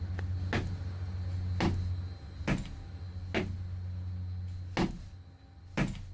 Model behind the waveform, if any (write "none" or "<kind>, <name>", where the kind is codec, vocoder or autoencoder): none